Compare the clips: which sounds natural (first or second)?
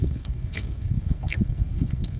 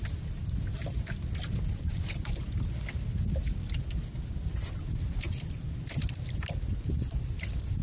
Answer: second